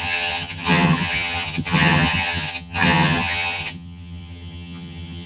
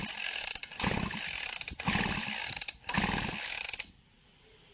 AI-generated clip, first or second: first